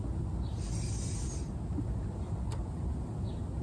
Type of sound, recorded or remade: recorded